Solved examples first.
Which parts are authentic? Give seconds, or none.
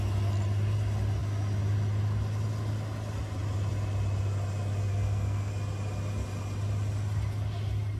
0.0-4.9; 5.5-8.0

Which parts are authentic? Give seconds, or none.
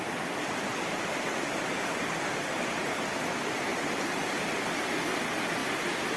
0.0-0.7; 2.9-3.7; 4.4-6.2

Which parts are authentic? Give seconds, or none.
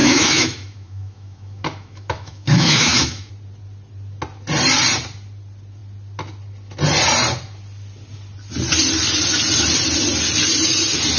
3.3-11.2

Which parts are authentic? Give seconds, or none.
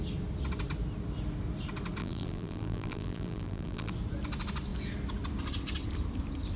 0.0-2.0; 3.9-6.6